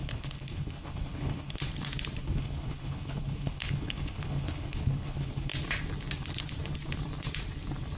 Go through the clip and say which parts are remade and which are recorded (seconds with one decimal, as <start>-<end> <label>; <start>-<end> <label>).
0.0-1.6 remade; 1.6-2.2 recorded; 2.2-5.5 remade; 5.5-8.0 recorded